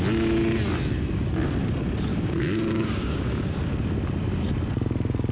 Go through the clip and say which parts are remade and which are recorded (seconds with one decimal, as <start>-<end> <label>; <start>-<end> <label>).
0.0-2.1 recorded; 2.1-3.5 remade; 3.5-5.3 recorded